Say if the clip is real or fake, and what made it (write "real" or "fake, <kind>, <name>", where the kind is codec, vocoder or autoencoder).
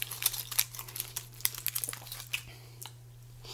real